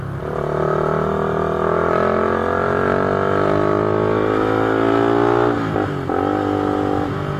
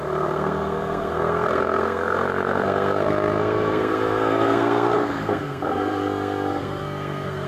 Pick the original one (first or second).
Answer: first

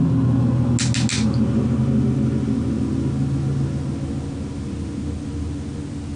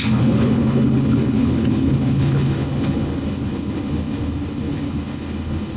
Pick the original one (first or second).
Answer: first